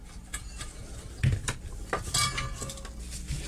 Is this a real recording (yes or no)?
yes